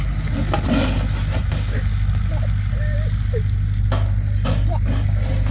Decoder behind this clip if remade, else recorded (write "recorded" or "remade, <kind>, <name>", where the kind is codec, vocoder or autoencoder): recorded